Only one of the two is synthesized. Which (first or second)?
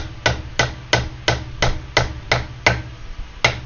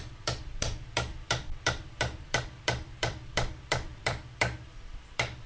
second